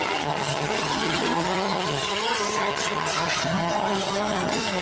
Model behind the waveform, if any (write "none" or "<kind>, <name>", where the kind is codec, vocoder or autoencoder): vocoder, HiFi-GAN